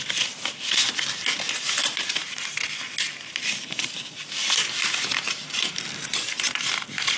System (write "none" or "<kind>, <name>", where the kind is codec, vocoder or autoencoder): none